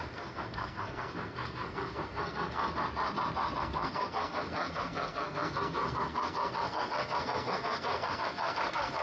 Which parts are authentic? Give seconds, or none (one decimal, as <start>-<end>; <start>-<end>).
2.6-3.6